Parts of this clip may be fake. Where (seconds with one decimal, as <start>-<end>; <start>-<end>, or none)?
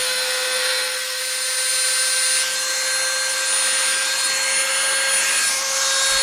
0.0-1.2